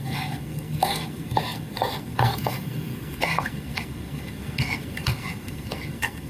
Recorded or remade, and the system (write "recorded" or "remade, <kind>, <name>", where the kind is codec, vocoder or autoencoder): remade, codec, SNAC